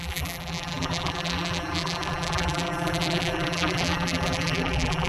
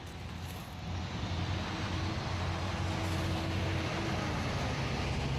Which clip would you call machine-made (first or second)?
first